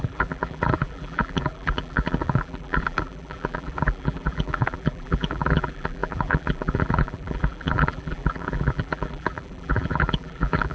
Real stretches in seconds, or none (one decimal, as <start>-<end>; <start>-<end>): none